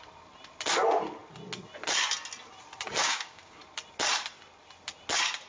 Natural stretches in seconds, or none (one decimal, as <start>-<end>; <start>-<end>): 0.0-3.0; 3.6-5.5